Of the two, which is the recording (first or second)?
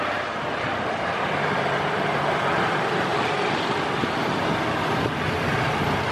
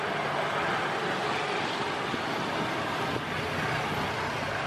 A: second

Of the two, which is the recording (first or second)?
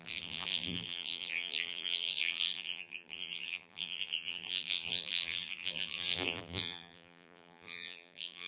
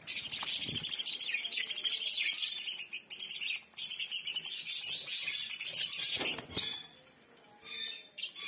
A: second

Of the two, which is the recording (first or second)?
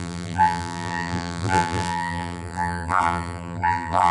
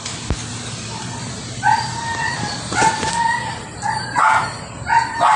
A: second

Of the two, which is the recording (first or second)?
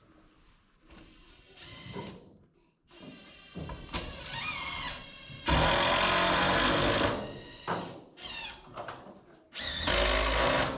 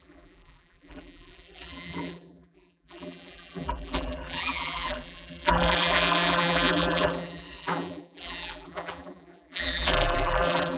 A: first